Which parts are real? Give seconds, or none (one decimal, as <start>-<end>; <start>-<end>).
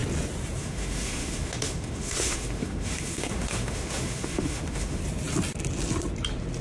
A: 0.0-0.6; 5.0-6.6